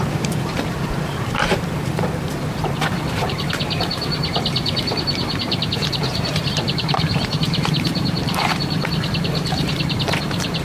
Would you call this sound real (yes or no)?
no